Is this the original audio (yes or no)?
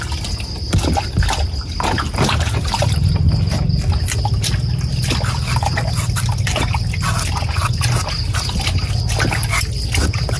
yes